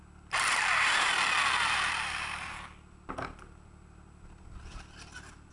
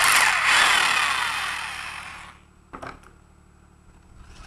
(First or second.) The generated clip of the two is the first